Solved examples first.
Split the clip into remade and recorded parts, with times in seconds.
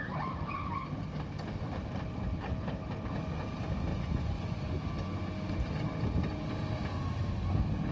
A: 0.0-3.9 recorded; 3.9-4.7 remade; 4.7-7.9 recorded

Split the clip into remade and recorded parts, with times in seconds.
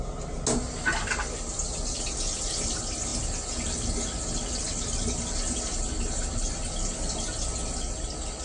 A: 0.0-8.4 recorded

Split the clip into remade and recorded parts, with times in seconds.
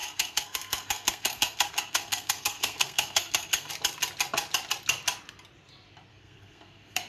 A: 0.0-3.7 remade; 3.7-6.1 recorded; 6.1-7.1 remade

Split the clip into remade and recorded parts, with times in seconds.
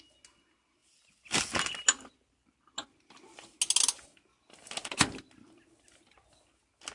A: 0.0-6.9 recorded